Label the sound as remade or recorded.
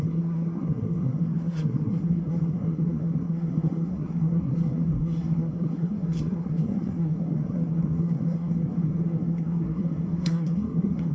remade